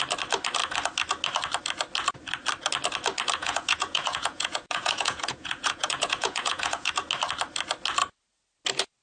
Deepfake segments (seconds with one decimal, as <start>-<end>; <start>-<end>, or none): 3.4-6.9